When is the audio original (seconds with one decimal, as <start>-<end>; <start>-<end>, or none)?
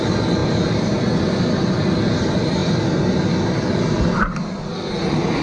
0.0-0.4; 1.0-5.4